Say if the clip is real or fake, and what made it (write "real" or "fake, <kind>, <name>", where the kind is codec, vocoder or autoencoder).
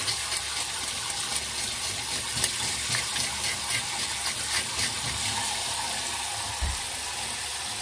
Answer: real